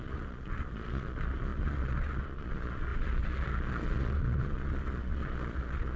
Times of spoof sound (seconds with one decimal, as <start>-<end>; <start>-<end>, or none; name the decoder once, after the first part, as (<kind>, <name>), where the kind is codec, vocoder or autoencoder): 0.0-6.0 (vocoder, Vocos)